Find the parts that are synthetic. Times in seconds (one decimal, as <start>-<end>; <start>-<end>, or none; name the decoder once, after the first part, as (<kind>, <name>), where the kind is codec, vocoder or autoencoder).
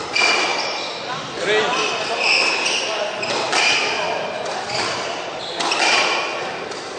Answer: none